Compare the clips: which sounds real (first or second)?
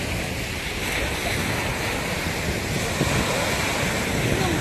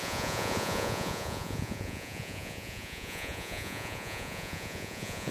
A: first